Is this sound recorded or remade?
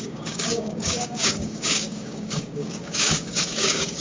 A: remade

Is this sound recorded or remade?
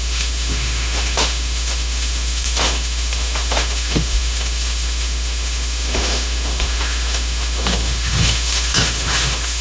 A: remade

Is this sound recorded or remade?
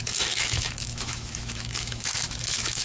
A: remade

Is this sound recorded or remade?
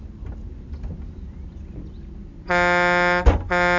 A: recorded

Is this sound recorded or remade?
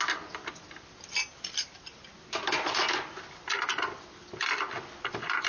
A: recorded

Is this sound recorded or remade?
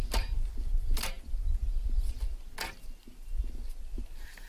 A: recorded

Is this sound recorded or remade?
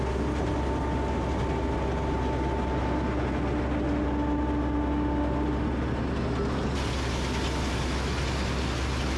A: recorded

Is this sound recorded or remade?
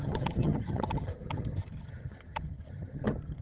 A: remade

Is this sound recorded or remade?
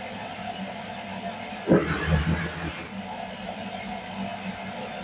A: recorded